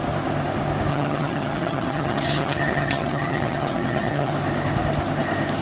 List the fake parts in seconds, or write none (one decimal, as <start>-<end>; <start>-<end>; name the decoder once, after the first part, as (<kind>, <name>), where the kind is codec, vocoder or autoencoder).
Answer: 0.9-4.3 (vocoder, HiFi-GAN)